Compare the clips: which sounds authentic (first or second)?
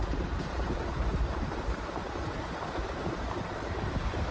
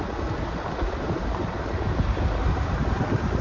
second